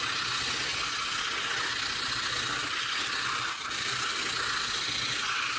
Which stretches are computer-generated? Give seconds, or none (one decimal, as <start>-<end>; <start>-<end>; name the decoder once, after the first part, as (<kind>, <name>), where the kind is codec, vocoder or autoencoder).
2.6-4.2 (vocoder, BigVGAN v2)